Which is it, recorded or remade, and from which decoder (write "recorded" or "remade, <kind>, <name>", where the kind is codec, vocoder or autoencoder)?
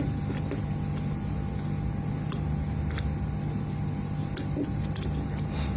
recorded